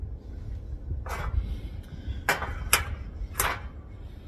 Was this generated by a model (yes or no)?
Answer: no